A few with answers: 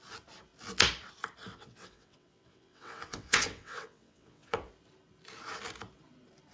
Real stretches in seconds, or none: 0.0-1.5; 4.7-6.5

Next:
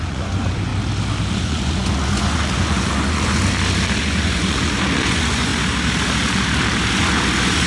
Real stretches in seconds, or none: 0.7-1.3; 3.4-4.0; 5.5-6.9

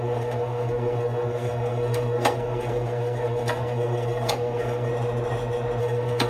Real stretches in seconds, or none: 4.9-5.8

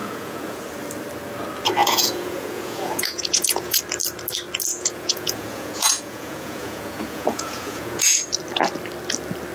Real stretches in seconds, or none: 0.6-1.8; 3.8-4.7; 8.2-9.5

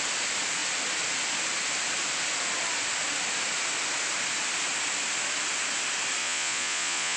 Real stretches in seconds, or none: 0.0-6.2

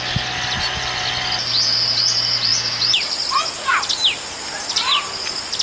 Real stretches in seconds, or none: 0.0-5.6

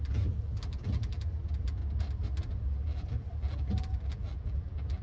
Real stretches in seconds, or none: 1.8-2.7